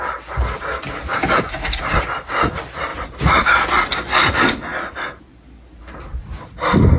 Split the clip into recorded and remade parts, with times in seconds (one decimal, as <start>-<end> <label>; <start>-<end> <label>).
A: 0.0-7.0 recorded